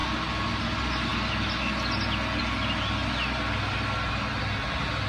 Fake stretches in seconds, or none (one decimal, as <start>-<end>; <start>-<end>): none